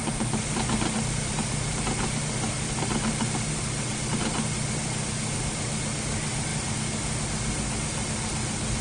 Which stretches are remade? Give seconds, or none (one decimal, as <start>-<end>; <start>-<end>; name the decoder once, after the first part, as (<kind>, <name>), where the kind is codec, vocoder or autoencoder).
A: none